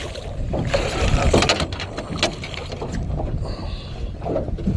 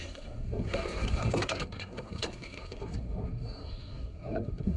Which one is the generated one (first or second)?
second